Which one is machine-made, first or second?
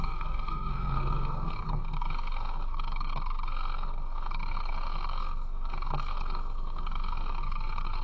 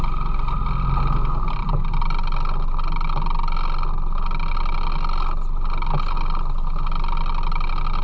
first